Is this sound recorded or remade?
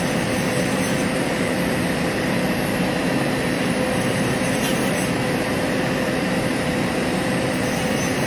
remade